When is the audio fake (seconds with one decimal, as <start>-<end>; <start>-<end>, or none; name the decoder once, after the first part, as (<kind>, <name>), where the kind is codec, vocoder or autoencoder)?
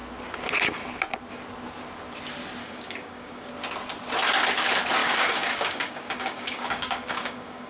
2.6-3.5 (codec, DAC); 5.0-7.7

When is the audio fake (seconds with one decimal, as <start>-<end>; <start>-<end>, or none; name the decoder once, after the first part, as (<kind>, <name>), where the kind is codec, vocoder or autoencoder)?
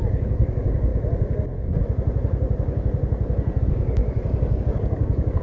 0.0-0.9 (codec, DAC); 3.6-5.4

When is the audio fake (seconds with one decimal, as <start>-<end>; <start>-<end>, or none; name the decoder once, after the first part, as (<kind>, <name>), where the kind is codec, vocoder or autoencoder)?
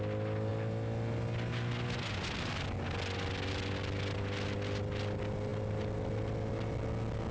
none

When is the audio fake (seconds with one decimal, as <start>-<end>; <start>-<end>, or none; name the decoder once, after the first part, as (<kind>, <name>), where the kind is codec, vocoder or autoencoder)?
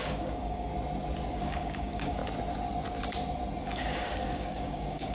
0.0-0.7 (codec, DAC); 1.3-2.2; 3.6-5.1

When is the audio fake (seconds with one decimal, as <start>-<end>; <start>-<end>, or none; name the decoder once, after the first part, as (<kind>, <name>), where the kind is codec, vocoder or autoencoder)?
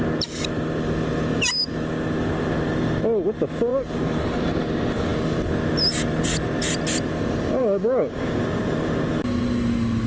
7.6-8.4 (codec, DAC)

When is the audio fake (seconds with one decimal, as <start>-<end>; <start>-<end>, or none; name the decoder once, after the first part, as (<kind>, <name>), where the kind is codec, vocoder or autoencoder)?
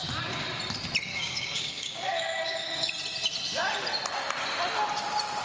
1.1-2.9 (codec, DAC)